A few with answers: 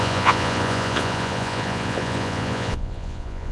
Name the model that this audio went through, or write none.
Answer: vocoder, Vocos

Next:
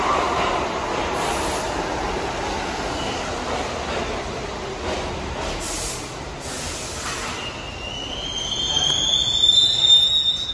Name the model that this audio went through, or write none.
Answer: none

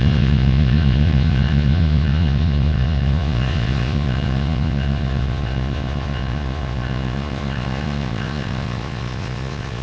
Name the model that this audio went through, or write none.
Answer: vocoder, Vocos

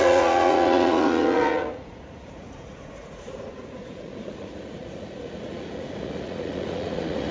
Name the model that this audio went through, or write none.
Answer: vocoder, Vocos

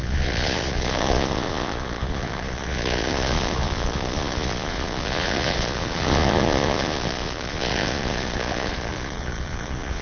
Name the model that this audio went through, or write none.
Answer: vocoder, Vocos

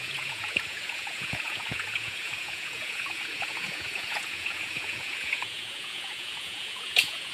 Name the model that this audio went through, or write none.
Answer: vocoder, Vocos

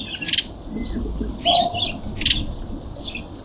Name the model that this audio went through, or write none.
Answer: none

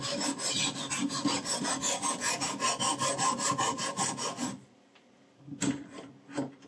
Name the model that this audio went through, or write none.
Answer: none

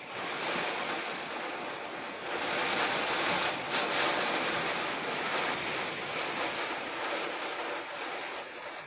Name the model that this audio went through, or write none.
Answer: none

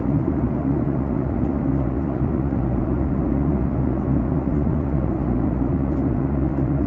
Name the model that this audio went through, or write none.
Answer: vocoder, Vocos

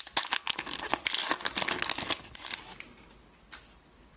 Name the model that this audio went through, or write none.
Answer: none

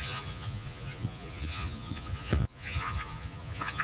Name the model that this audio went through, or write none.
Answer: vocoder, Vocos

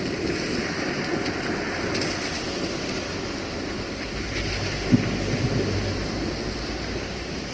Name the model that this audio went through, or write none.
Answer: none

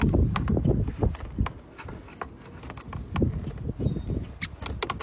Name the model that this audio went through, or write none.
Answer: none